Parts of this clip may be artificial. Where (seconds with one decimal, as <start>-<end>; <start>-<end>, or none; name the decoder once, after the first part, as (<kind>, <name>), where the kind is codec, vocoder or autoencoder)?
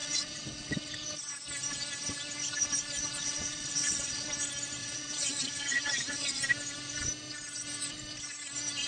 0.0-0.9 (vocoder, WaveNeXt); 3.2-4.3; 4.8-6.4